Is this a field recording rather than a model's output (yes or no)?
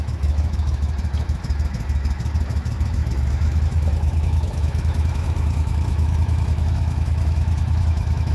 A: no